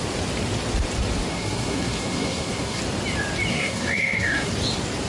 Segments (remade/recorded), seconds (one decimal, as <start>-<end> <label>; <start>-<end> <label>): 0.0-1.3 recorded; 1.3-2.8 remade; 2.8-3.5 recorded; 3.5-4.5 remade; 4.5-5.1 recorded